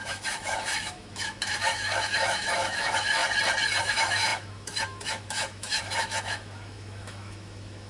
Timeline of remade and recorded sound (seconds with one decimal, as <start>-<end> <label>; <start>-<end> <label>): 0.0-3.2 remade; 3.2-3.8 recorded; 3.8-7.9 remade